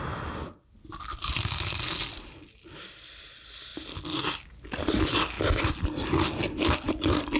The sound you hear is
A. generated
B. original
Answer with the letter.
B